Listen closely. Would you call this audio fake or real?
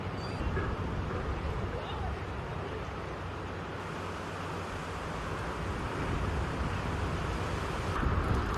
real